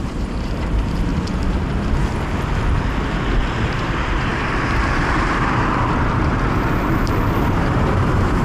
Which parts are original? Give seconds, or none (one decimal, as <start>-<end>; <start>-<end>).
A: 1.1-3.7